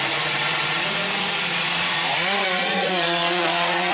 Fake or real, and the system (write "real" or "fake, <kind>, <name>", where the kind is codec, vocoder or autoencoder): fake, vocoder, Vocos